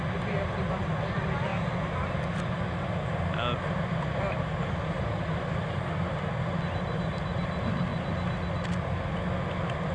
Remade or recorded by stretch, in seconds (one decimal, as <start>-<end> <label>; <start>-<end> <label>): 0.0-9.9 recorded